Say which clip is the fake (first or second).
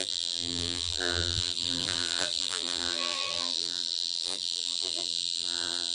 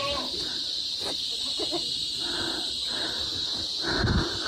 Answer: first